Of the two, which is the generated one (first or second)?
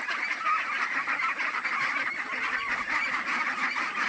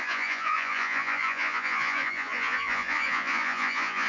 second